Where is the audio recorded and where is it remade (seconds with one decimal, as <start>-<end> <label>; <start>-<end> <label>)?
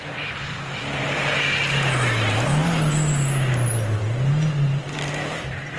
0.0-5.8 recorded